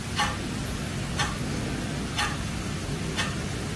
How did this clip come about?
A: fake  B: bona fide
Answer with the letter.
B